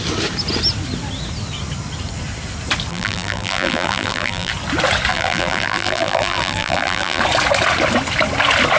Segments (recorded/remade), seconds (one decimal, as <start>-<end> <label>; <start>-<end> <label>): 0.0-2.9 recorded; 2.9-4.5 remade; 4.5-5.1 recorded; 5.1-7.2 remade; 7.2-8.8 recorded